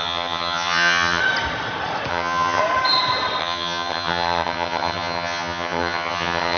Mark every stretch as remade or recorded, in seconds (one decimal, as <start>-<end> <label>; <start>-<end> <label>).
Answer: 0.0-1.2 remade; 1.2-2.1 recorded; 2.1-2.6 remade; 2.6-3.4 recorded; 3.4-6.6 remade

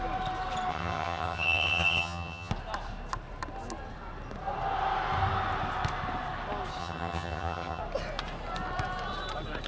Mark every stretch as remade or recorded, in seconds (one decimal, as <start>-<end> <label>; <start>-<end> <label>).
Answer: 0.0-0.7 recorded; 0.7-2.5 remade; 2.5-6.8 recorded; 6.8-7.8 remade; 7.8-9.7 recorded